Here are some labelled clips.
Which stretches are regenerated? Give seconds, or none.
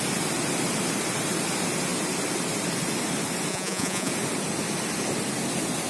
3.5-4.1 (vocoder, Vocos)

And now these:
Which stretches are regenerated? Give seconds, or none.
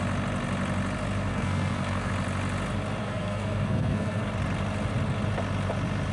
1.3-2.1 (codec, SNAC); 3.0-4.3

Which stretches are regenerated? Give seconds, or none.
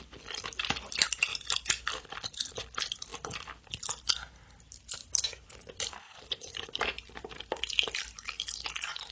5.0-7.4 (vocoder, BigVGAN v2)